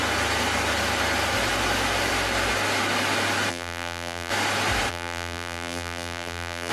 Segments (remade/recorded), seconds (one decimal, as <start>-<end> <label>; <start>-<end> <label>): 0.0-3.5 recorded; 3.5-4.3 remade; 4.3-4.9 recorded; 4.9-6.7 remade